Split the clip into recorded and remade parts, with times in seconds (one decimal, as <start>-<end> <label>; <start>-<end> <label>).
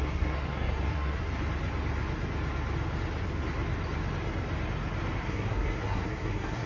0.0-1.2 remade; 1.2-5.2 recorded; 5.2-6.7 remade